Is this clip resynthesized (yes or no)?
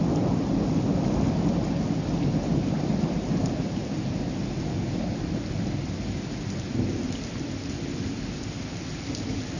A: no